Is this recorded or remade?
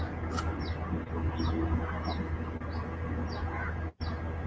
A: recorded